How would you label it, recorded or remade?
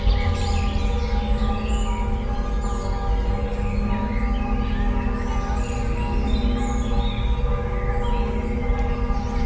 recorded